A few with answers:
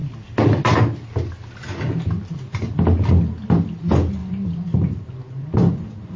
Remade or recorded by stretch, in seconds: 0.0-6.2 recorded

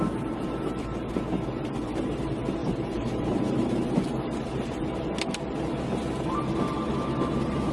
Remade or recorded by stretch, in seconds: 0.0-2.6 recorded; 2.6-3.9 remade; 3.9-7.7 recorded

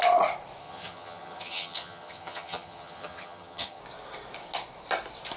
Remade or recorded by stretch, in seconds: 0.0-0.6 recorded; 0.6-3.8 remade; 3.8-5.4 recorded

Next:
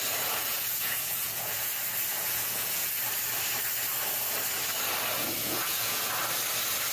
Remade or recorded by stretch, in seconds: 0.0-0.4 recorded; 0.4-1.7 remade; 1.7-2.1 recorded; 2.1-3.0 remade; 3.0-5.4 recorded; 5.4-6.1 remade; 6.1-6.9 recorded

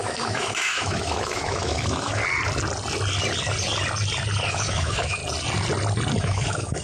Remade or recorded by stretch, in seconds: 0.0-2.2 remade; 2.2-4.5 recorded; 4.5-5.2 remade; 5.2-6.2 recorded; 6.2-6.8 remade

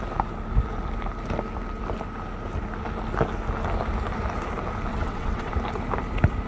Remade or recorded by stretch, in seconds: 0.0-4.9 recorded; 4.9-5.5 remade; 5.5-6.5 recorded

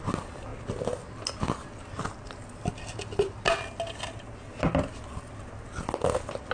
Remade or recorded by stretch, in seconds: 0.0-6.5 recorded

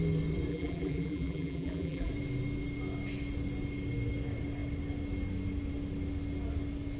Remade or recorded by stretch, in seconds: 0.0-0.5 recorded; 0.5-2.1 remade; 2.1-7.0 recorded